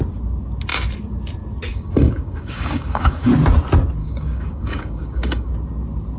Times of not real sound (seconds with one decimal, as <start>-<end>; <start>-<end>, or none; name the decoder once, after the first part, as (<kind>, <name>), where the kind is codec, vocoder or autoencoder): 1.7-3.3 (codec, DAC); 4.0-5.5